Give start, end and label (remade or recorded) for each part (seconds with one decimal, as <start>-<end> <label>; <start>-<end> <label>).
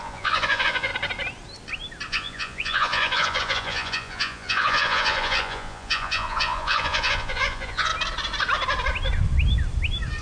0.0-0.9 remade; 0.9-2.1 recorded; 2.1-7.9 remade; 7.9-10.2 recorded